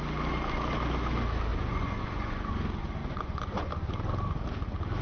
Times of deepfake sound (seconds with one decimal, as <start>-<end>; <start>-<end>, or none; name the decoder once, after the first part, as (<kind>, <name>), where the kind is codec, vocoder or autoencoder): 1.5-2.5 (vocoder, Vocos); 3.0-3.7